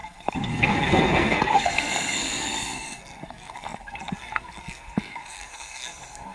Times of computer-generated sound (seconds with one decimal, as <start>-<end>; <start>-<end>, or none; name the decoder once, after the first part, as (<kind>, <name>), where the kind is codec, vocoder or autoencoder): 0.0-6.3 (codec, SNAC)